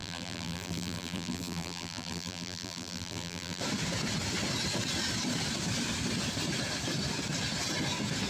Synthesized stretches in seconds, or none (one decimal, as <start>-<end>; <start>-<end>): 0.0-3.6